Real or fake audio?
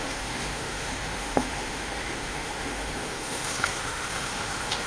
fake